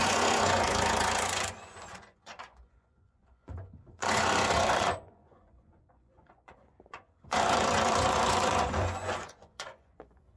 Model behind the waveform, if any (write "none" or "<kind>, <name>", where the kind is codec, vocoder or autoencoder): vocoder, Vocos